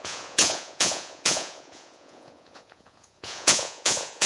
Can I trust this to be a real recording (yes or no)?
no